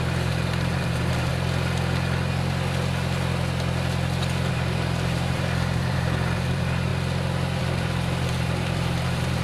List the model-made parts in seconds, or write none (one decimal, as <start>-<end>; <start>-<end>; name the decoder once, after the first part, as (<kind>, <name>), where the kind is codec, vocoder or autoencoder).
0.0-1.3 (vocoder, BigVGAN v2); 4.5-6.9; 7.6-9.4